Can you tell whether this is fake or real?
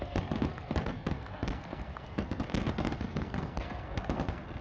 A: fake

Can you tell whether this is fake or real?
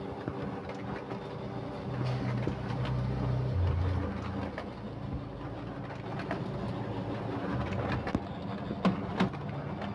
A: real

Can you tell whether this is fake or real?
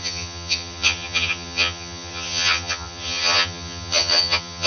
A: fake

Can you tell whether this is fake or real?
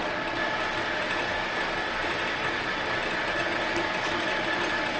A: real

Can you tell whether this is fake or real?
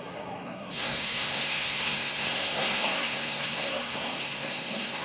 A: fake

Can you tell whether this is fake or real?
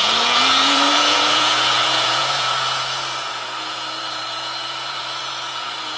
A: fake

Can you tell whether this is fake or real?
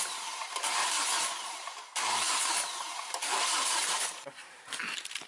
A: fake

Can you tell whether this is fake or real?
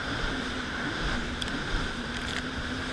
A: fake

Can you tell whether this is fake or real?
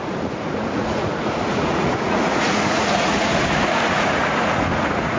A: fake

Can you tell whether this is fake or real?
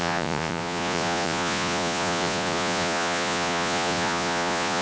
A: fake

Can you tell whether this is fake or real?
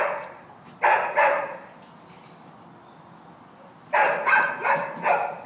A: real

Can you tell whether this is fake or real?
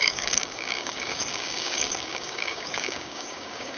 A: fake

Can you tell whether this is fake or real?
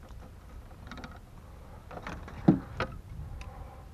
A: real